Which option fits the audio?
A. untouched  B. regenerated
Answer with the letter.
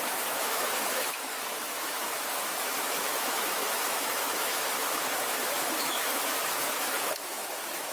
B